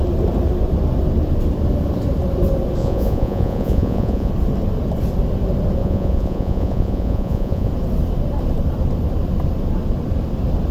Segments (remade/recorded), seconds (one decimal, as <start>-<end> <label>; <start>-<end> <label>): 0.0-2.8 recorded; 2.8-4.3 remade; 4.3-5.8 recorded; 5.8-7.7 remade; 7.7-10.7 recorded